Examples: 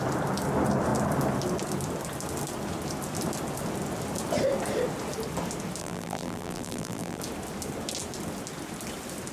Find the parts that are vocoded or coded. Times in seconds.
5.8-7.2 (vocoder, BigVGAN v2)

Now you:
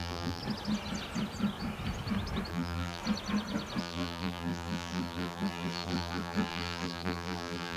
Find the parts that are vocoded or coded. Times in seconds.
0.0-0.4 (vocoder, BigVGAN v2); 2.5-3.0; 3.8-7.8